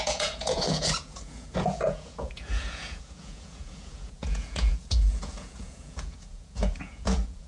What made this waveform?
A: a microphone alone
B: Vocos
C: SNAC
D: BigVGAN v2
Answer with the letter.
B